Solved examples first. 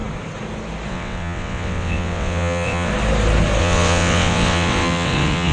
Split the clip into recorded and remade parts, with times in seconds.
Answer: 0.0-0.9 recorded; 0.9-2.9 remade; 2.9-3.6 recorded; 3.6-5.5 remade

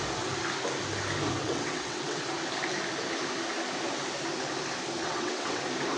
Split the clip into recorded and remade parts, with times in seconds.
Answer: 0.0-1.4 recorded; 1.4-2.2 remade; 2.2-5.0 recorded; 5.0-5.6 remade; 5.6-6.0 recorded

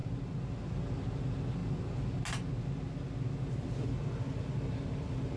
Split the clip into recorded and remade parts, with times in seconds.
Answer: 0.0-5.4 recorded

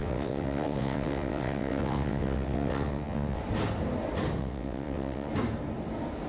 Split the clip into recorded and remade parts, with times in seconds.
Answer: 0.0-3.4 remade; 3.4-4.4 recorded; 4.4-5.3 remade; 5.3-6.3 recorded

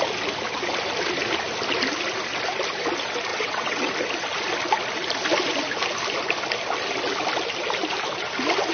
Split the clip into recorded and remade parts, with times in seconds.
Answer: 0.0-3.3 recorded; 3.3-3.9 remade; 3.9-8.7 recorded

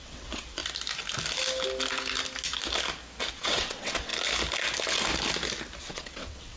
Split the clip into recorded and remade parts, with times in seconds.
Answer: 0.0-0.6 remade; 0.6-3.3 recorded; 3.3-4.1 remade; 4.1-5.8 recorded; 5.8-6.6 remade